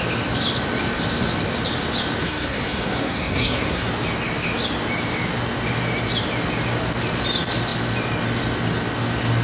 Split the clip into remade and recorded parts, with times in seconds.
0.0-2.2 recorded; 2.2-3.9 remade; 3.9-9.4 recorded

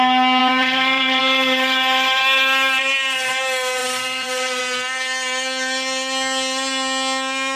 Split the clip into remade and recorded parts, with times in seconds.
0.0-0.4 recorded; 0.4-1.2 remade; 1.2-3.8 recorded; 3.8-4.6 remade; 4.6-7.6 recorded

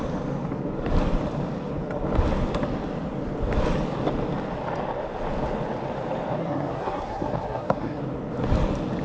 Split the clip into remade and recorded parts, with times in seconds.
0.0-6.4 recorded; 6.4-8.0 remade; 8.0-9.0 recorded

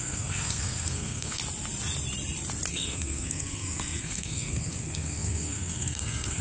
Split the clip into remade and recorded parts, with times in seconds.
0.0-1.4 remade; 1.4-2.7 recorded; 2.7-6.4 remade

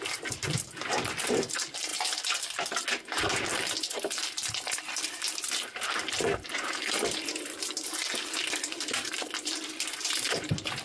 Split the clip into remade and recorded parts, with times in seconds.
0.0-10.8 recorded

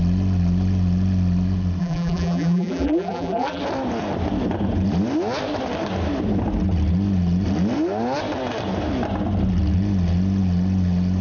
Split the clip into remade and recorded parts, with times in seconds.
0.0-1.8 recorded; 1.8-3.6 remade; 3.6-11.2 recorded

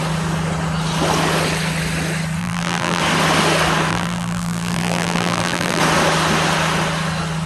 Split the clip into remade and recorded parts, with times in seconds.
0.0-2.4 recorded; 2.4-3.0 remade; 3.0-3.9 recorded; 3.9-5.8 remade; 5.8-7.5 recorded